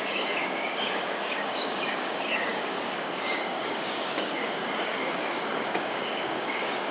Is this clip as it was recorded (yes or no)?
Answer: no